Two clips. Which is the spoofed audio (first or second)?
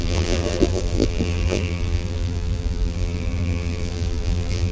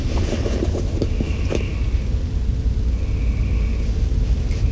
first